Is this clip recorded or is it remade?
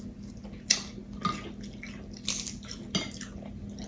recorded